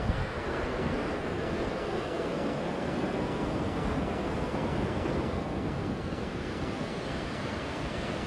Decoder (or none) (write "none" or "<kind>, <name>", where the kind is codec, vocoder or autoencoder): codec, SNAC